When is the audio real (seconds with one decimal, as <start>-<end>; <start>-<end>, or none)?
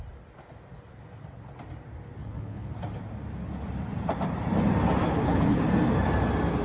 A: 0.0-2.2; 2.7-5.0; 5.6-6.6